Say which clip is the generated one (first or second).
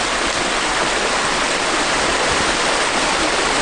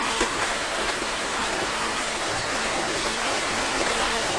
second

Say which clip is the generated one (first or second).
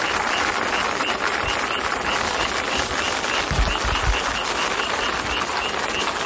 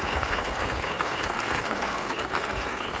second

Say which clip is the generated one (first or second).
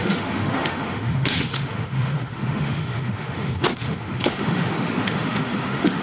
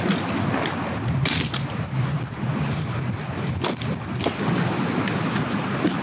first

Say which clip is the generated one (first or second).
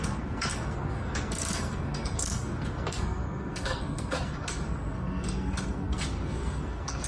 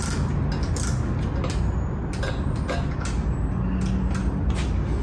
first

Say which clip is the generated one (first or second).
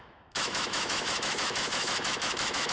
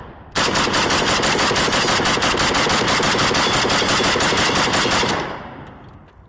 first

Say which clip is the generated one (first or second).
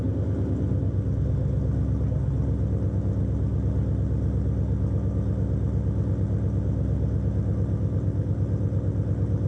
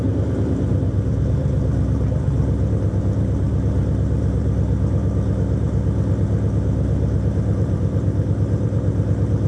second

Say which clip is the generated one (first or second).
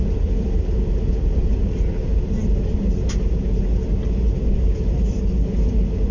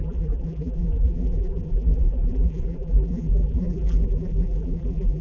second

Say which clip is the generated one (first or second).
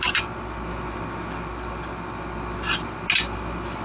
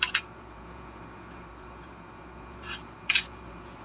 second